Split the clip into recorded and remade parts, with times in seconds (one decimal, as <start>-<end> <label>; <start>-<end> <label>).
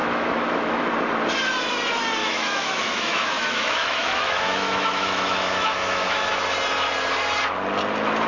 0.0-0.9 remade; 0.9-2.2 recorded; 2.2-6.3 remade; 6.3-8.3 recorded